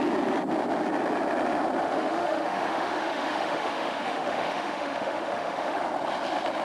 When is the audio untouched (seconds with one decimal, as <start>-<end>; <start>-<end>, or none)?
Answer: 0.0-1.8; 5.8-6.6